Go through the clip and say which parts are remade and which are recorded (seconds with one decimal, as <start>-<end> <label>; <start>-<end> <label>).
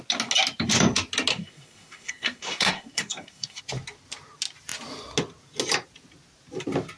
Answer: 0.0-1.3 recorded; 1.3-3.6 remade; 3.6-7.0 recorded